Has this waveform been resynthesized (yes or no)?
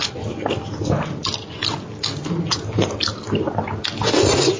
no